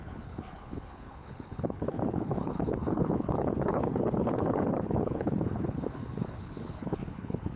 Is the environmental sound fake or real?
fake